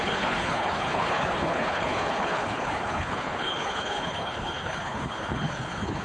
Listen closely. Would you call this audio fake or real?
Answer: fake